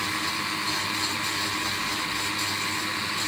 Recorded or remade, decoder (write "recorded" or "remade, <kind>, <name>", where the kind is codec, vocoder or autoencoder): recorded